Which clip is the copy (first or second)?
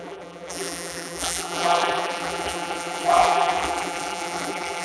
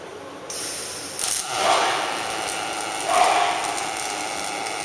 first